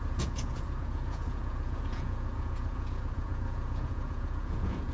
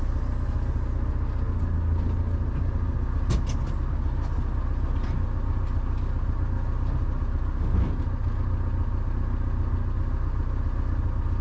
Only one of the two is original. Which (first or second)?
second